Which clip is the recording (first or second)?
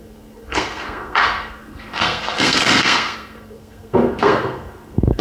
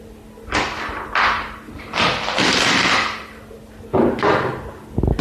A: second